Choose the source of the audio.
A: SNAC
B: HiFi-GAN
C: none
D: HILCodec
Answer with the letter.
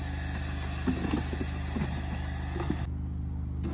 C